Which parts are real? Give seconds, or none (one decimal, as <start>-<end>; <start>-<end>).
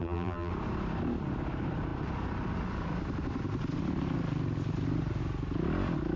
0.5-6.2